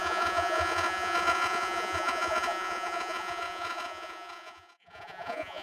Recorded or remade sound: remade